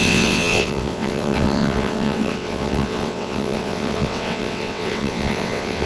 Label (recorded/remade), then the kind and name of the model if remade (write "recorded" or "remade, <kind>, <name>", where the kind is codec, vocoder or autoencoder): remade, vocoder, WaveNeXt